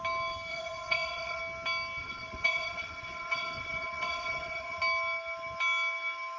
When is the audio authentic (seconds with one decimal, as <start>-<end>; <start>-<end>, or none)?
0.0-0.5; 1.4-2.0; 4.8-6.4